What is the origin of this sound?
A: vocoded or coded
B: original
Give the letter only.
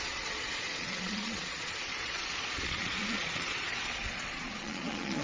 A